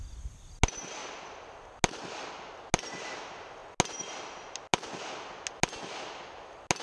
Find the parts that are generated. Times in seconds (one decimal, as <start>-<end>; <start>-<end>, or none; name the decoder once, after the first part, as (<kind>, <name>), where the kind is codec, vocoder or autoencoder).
none